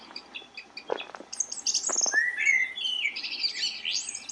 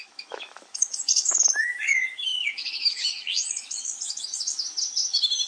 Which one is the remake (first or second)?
second